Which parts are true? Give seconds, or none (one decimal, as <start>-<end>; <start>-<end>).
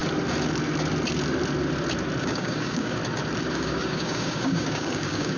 0.0-2.2; 3.0-3.5